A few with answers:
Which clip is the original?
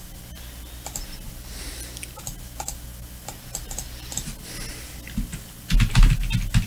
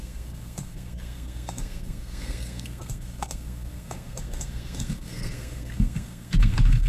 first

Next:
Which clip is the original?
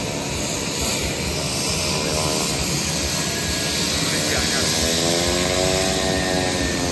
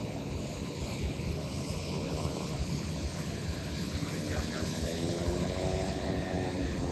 first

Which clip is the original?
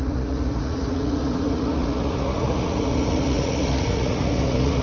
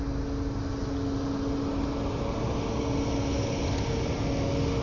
second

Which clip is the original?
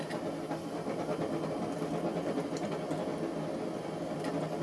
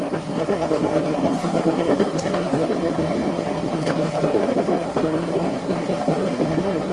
first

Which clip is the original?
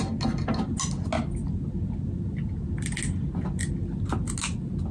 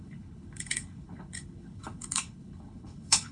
first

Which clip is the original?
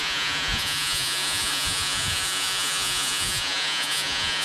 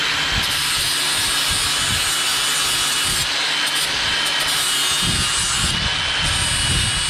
second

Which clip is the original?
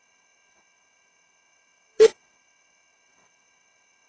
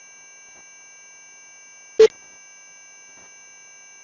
second